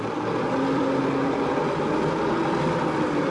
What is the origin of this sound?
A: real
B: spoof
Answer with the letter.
A